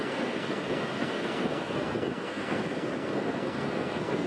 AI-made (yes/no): yes